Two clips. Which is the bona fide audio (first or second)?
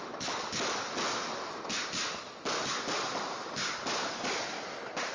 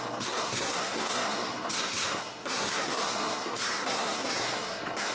first